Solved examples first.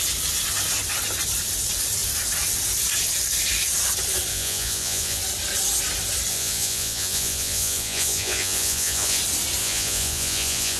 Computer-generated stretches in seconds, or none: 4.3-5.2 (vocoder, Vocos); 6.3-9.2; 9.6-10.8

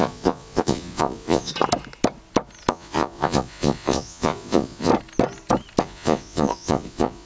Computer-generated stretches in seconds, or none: 0.0-1.5 (vocoder, Vocos); 2.7-4.9; 5.8-7.3

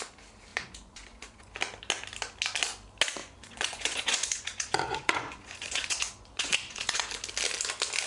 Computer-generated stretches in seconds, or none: 0.5-1.5 (vocoder, Vocos); 3.2-7.1

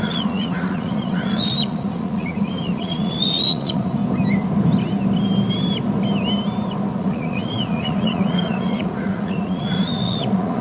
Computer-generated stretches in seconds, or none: 0.0-4.0 (vocoder, Vocos); 7.0-10.6

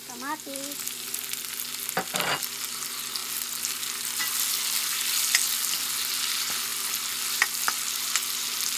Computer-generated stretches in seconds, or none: none

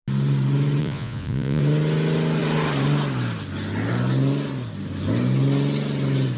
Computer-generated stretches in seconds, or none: 0.8-1.6 (vocoder, Vocos)

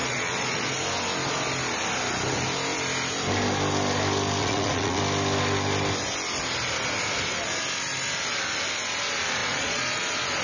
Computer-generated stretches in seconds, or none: 0.0-0.7 (vocoder, Vocos); 4.4-5.0; 9.4-10.0

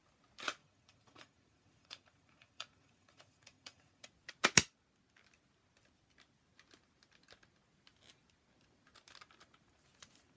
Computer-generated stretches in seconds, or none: 0.6-4.1 (vocoder, Vocos)